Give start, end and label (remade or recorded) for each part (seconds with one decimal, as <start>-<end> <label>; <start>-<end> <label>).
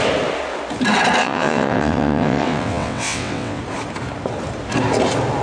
0.0-1.2 recorded; 1.2-3.6 remade; 3.6-5.4 recorded